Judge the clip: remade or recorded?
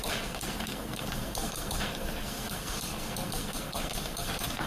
remade